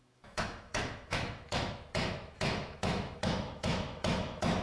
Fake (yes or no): yes